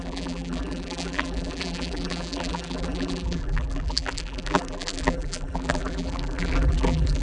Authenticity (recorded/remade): remade